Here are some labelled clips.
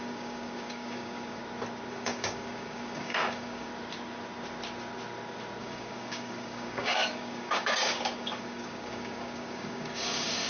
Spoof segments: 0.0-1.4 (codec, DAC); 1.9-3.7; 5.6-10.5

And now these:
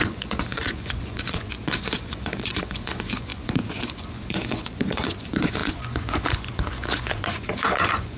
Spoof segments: 0.0-8.2 (vocoder, Vocos)